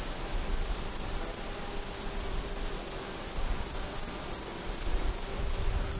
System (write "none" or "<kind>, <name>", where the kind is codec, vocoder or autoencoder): none